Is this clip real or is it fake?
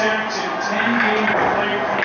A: real